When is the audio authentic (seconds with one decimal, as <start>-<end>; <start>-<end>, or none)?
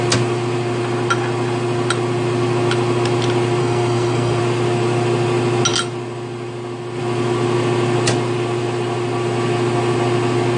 0.0-3.6; 4.4-10.6